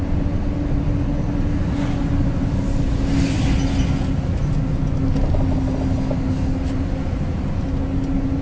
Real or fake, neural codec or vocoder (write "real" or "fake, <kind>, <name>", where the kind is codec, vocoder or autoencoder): real